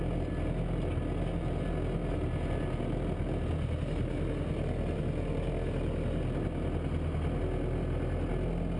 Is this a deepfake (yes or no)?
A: no